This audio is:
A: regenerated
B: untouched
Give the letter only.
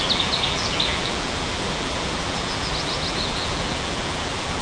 A